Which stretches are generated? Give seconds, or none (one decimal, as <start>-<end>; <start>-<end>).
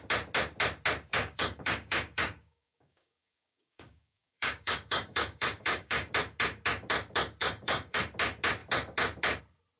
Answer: 1.1-6.1; 7.4-8.0